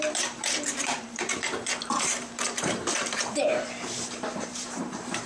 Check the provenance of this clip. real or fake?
fake